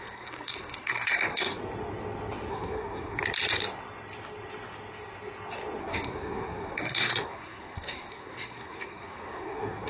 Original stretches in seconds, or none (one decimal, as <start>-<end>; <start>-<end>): 1.6-2.5; 3.2-5.8